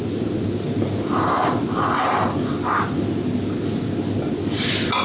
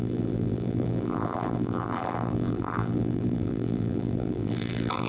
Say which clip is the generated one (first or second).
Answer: second